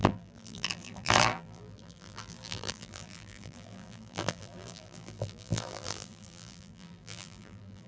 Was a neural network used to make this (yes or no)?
yes